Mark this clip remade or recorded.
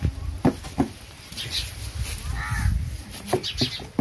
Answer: recorded